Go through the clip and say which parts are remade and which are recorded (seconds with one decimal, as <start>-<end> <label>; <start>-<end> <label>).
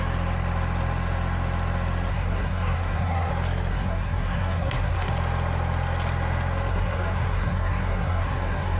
0.0-2.1 recorded; 2.1-3.3 remade; 3.3-3.7 recorded; 3.7-5.1 remade; 5.1-6.7 recorded; 6.7-8.8 remade